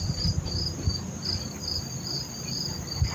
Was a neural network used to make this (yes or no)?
yes